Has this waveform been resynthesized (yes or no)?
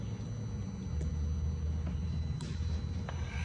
no